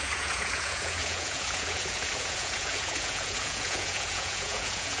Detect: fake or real fake